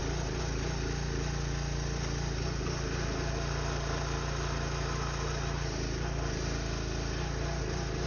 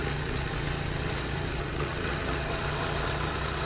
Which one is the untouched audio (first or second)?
first